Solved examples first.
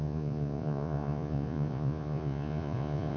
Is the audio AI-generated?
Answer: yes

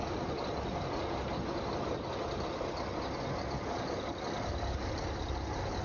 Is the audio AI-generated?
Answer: no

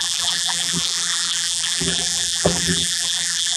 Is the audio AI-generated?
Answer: yes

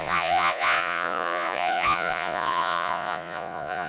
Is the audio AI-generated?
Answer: yes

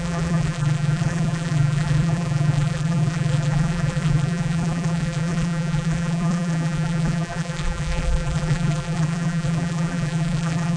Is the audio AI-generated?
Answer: yes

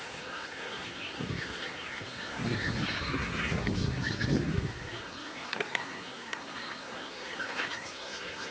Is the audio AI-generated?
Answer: yes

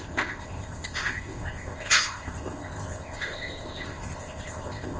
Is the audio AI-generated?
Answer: yes